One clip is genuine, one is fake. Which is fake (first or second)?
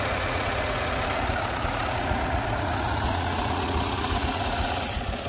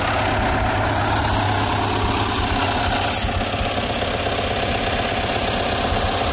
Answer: first